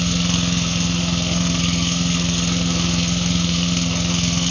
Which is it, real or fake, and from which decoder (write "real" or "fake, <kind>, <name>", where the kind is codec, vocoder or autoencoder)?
fake, codec, SNAC